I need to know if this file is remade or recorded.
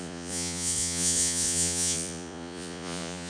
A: remade